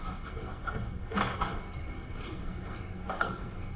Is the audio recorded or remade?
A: remade